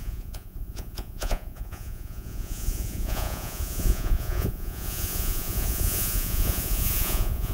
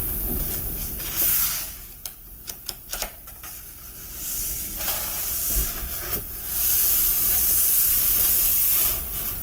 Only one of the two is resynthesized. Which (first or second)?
first